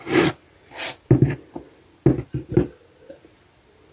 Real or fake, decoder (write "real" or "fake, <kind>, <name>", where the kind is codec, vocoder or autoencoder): real